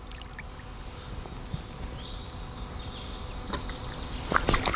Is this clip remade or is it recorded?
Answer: recorded